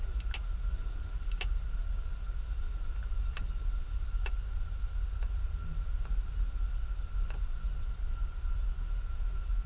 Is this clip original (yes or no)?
yes